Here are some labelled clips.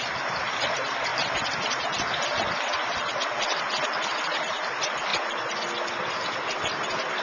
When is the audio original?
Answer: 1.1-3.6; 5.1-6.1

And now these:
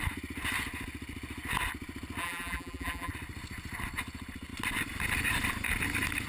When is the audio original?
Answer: 0.0-2.2; 3.1-6.3

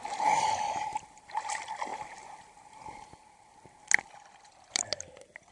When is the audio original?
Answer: 0.0-0.8; 1.9-2.6

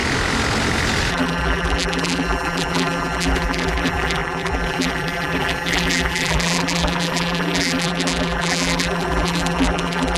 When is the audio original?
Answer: 0.0-1.1

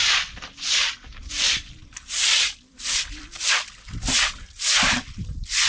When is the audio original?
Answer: none

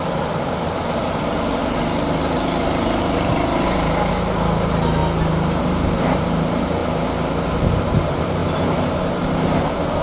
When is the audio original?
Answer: 5.0-5.6; 6.8-7.4